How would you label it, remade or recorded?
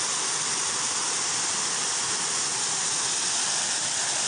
recorded